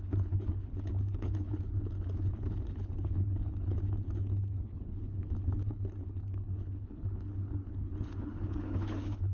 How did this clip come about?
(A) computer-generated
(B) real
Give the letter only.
A